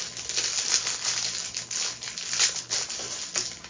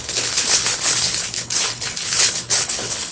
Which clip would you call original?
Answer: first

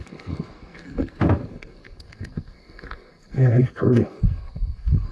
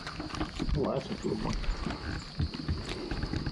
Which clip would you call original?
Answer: second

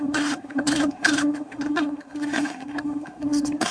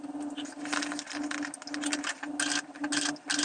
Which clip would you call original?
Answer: second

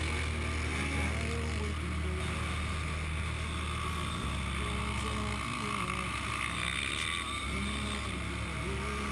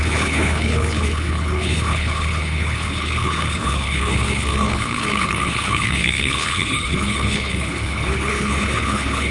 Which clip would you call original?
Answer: first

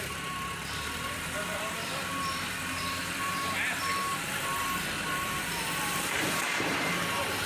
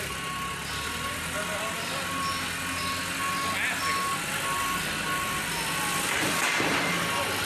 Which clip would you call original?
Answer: second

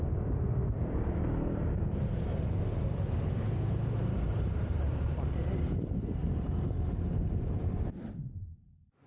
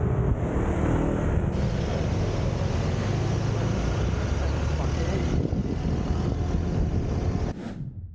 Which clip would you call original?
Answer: second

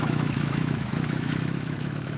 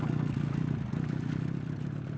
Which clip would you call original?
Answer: second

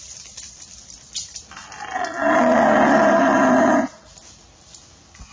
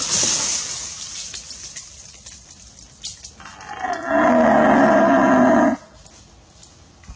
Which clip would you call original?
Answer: second